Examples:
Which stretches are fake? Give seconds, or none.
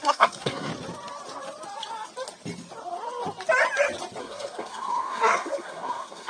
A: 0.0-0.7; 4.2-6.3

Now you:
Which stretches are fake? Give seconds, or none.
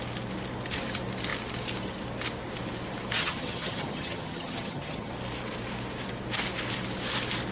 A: 3.2-5.1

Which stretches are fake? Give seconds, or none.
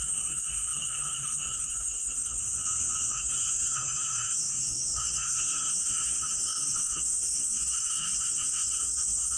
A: 0.0-2.4; 3.1-9.4